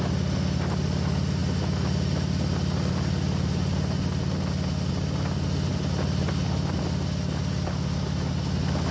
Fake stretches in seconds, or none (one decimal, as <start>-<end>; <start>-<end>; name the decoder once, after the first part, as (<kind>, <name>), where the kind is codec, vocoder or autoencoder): none